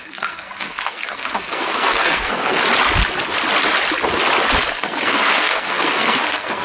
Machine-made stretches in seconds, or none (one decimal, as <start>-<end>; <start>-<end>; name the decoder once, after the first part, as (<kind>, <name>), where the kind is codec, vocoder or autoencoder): 0.0-2.6 (codec, SNAC); 4.7-6.6